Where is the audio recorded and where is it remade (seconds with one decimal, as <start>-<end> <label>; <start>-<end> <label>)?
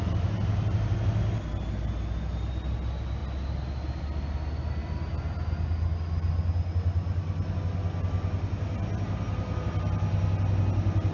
0.0-11.1 recorded